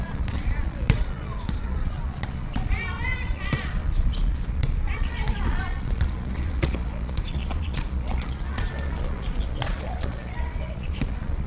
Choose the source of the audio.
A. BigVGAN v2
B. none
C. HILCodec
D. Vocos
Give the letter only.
D